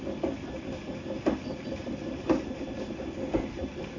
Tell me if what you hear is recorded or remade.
recorded